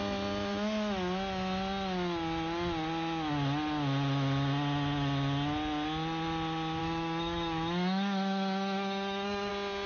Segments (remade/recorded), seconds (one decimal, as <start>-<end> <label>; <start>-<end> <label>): 0.0-6.8 recorded; 6.8-9.5 remade; 9.5-9.9 recorded